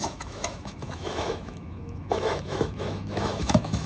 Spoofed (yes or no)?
yes